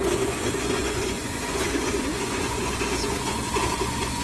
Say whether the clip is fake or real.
fake